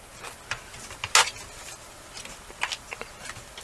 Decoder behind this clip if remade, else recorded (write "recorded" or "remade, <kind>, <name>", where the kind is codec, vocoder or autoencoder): recorded